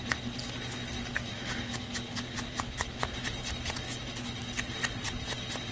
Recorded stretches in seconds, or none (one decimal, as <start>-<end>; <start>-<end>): 0.0-1.1; 1.9-5.7